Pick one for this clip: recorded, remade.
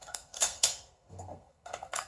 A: remade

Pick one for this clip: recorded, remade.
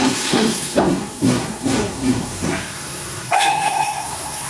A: remade